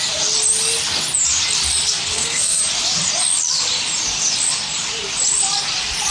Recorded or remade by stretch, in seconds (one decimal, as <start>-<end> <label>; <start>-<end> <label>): 0.0-2.1 recorded; 2.1-2.6 remade; 2.6-6.1 recorded